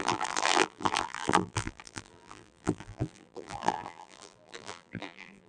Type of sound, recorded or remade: remade